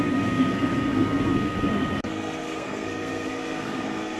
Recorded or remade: remade